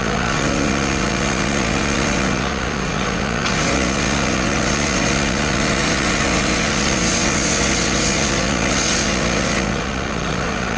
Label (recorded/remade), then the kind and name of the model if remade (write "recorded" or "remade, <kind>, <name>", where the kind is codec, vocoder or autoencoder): remade, vocoder, WaveNeXt